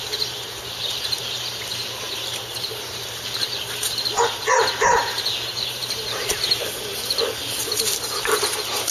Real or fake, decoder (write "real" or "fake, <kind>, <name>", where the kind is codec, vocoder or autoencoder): fake, vocoder, BigVGAN v2